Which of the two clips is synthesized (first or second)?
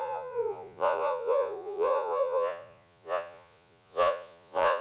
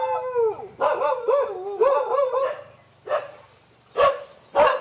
first